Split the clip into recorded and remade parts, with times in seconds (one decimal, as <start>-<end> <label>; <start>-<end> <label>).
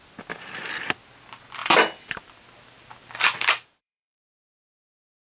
0.0-1.6 recorded; 1.6-4.7 remade; 4.7-5.2 recorded